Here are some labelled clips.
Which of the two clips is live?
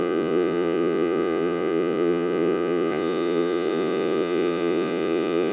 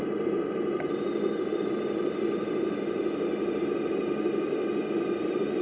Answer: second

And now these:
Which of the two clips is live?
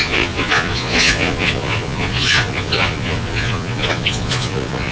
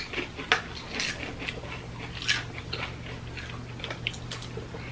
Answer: second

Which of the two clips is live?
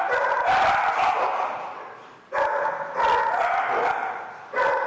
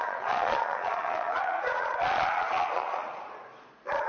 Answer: first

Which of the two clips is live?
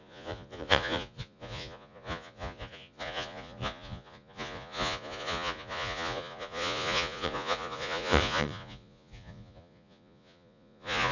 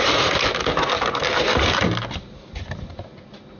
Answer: second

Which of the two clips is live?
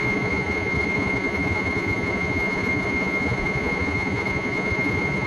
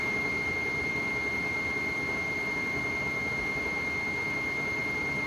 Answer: second